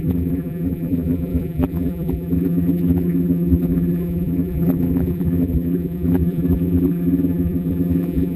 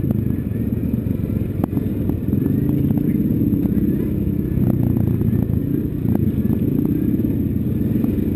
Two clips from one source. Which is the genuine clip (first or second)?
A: second